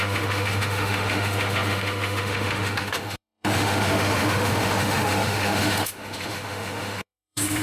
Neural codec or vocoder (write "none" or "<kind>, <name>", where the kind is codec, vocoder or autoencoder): autoencoder, DAC-VAE